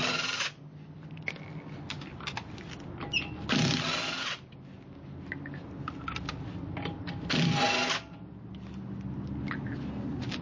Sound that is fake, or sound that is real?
real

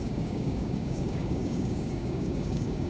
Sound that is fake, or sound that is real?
fake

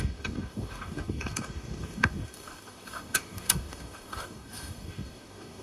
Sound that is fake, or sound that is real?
fake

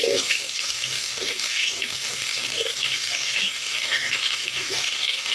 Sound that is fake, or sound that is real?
fake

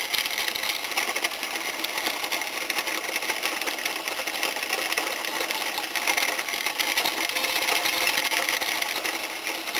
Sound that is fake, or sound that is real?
real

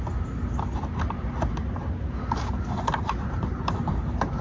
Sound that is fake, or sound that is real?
real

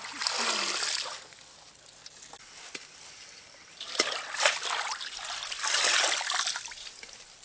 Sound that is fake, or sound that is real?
real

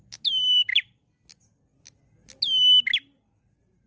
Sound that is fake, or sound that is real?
real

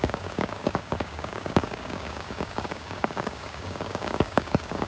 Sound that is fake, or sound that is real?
fake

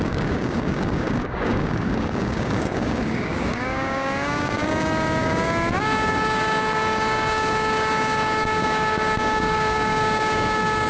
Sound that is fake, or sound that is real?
fake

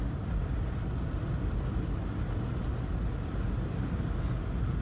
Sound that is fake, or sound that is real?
real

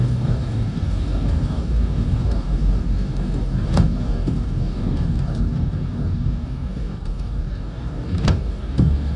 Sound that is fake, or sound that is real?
fake